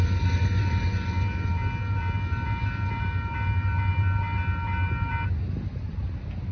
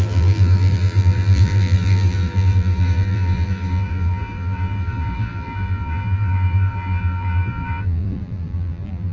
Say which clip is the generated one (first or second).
second